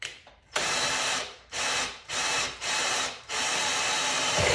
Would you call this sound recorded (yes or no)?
no